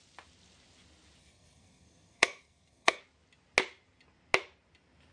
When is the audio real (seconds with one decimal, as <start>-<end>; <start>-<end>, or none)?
0.0-1.2; 3.0-5.1